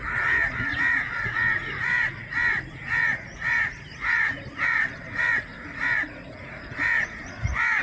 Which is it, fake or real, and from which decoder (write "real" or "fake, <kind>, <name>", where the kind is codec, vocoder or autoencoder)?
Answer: fake, vocoder, Vocos